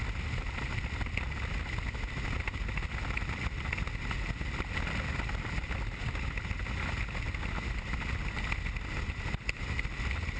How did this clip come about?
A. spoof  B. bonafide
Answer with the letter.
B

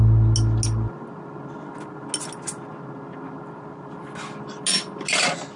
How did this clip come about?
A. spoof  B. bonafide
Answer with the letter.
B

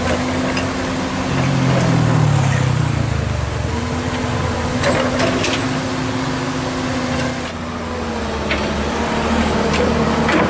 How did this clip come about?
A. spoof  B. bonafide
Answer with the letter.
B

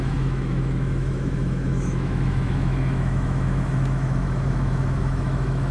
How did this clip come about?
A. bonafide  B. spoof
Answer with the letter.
B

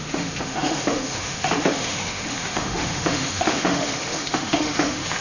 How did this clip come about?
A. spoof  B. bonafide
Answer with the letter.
A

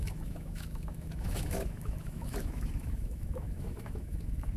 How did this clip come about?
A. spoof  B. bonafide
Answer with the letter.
A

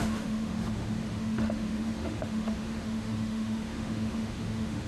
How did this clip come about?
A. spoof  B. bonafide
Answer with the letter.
A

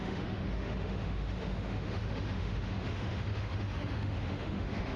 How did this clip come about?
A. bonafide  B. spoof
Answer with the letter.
B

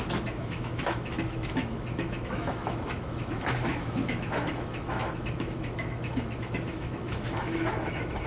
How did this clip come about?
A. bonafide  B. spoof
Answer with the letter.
B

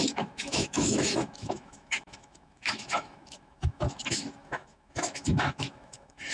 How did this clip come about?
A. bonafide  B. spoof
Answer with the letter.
B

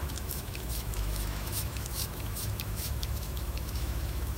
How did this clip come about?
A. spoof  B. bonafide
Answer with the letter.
A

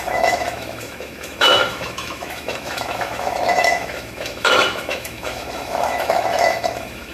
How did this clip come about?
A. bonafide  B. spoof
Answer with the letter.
B